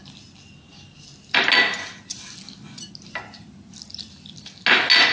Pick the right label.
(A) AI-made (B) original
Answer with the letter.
B